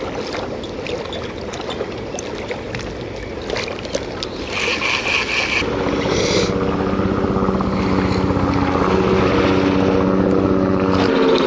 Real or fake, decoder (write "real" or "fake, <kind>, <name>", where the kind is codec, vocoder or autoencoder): real